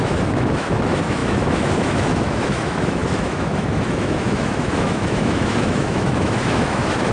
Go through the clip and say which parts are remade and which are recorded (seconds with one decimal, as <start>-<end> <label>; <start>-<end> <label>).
0.0-7.1 remade